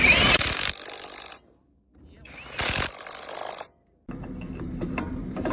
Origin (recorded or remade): recorded